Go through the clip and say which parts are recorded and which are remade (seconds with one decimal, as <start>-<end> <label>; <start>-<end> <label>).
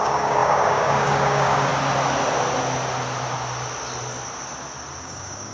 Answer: 0.0-1.7 remade; 1.7-5.0 recorded; 5.0-5.5 remade